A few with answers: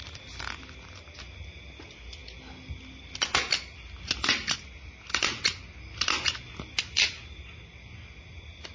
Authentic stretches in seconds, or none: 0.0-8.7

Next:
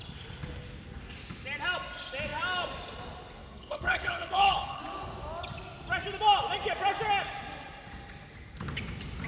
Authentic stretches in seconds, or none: 0.0-3.4; 4.8-9.3

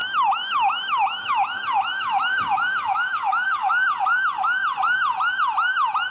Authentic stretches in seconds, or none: 3.7-6.1